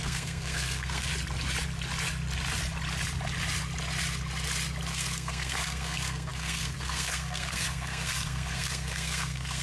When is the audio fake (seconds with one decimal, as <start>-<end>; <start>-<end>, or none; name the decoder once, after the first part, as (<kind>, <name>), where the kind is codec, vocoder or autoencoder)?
0.0-1.1 (codec, SNAC); 4.9-9.6